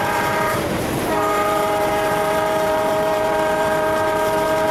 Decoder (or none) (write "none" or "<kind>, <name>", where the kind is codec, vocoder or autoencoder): vocoder, BigVGAN v2